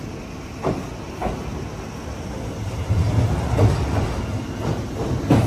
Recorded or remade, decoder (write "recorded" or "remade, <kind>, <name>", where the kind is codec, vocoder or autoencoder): recorded